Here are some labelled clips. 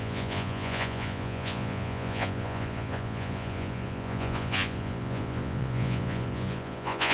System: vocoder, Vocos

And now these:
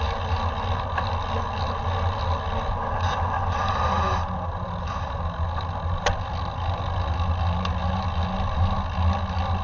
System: none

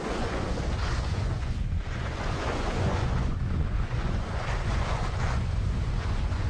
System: vocoder, Vocos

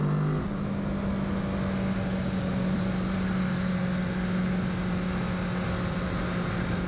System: none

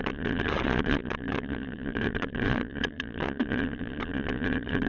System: vocoder, Vocos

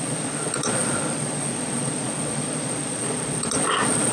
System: vocoder, Vocos